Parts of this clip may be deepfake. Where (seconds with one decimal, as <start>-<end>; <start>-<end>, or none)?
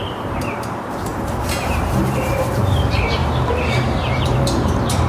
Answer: 0.0-3.2; 4.2-5.1